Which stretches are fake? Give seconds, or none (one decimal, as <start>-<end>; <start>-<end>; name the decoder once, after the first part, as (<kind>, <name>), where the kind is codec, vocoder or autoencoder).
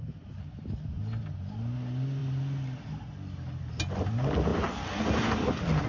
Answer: none